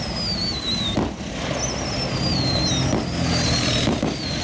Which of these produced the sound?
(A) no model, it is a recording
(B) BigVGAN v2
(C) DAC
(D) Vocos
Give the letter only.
A